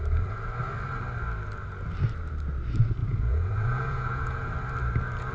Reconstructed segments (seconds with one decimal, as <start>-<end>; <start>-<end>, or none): 3.0-4.5